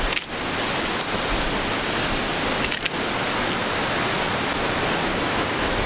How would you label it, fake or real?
real